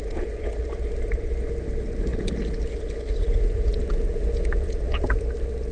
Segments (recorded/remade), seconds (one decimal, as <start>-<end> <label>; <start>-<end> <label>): 0.0-0.6 remade; 0.6-3.2 recorded; 3.2-5.2 remade; 5.2-5.7 recorded